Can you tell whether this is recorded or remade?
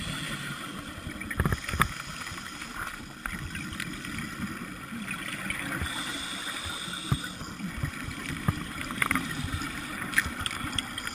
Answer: recorded